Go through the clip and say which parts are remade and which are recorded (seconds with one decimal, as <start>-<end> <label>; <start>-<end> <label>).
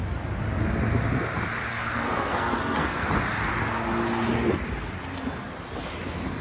0.0-1.7 recorded; 1.7-3.1 remade; 3.1-6.4 recorded